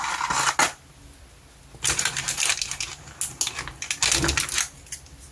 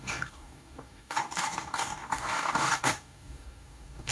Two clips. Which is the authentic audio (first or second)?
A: first